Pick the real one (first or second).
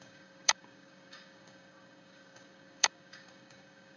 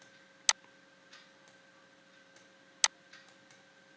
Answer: second